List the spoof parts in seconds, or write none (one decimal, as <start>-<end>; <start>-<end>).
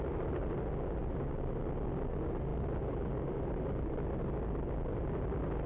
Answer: none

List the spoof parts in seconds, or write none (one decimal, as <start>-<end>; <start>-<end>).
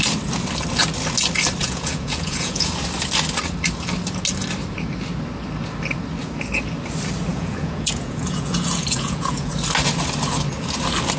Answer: 1.6-2.7; 7.3-9.5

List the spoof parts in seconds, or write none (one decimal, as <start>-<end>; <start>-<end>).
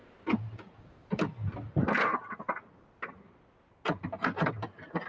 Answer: none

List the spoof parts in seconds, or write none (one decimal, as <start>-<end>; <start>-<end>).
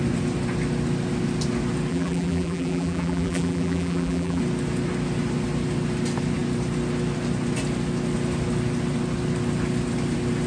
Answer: 1.9-4.4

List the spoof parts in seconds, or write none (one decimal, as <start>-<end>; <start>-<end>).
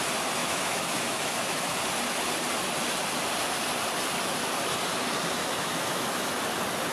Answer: 0.4-1.8; 5.4-6.4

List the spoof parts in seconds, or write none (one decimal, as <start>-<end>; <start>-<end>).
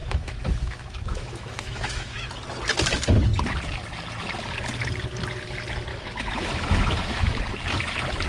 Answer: 0.0-2.3; 5.9-7.4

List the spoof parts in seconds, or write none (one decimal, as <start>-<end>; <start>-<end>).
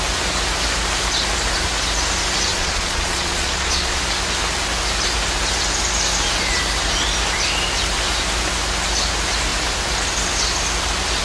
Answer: 2.5-4.0